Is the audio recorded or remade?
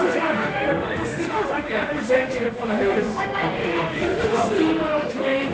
remade